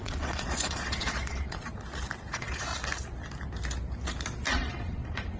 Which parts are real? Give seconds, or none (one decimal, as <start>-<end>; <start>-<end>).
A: 1.7-2.3; 2.7-4.5